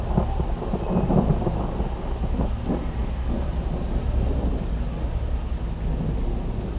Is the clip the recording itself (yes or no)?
yes